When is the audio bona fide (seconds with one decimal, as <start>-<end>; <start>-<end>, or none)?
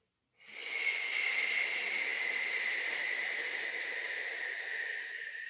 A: 0.0-0.6; 1.2-5.5